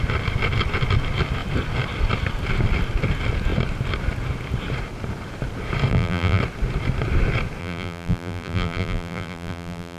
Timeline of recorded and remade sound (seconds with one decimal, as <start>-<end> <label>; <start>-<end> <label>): 0.0-5.9 recorded; 5.9-6.4 remade; 6.4-7.6 recorded; 7.6-10.0 remade